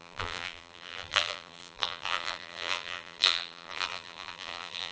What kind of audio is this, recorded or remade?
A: remade